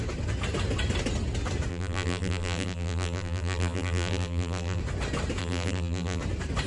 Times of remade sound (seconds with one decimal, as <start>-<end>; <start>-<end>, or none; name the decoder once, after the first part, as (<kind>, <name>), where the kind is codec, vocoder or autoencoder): 1.7-4.8 (vocoder, BigVGAN v2); 5.4-6.2